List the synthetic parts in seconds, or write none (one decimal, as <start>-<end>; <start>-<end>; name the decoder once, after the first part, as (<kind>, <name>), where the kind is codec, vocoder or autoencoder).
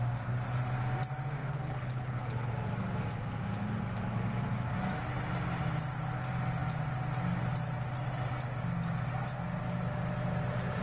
1.4-2.5 (codec, HILCodec)